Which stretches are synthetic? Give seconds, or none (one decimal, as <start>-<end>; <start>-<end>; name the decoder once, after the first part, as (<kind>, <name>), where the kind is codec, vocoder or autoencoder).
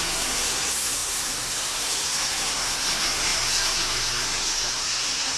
0.0-5.4 (codec, SNAC)